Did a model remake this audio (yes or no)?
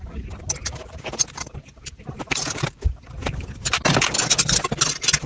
no